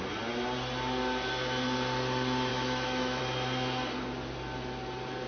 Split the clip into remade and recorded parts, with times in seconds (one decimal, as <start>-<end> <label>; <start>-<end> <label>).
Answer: 0.0-2.5 recorded; 2.5-3.2 remade; 3.2-5.3 recorded